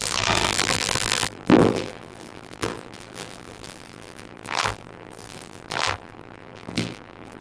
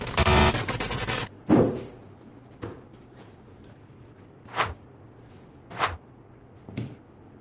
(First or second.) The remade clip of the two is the first